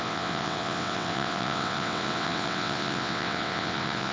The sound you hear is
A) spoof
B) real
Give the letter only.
A